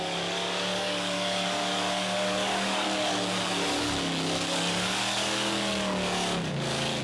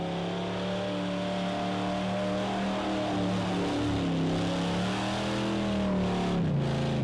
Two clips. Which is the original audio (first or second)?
second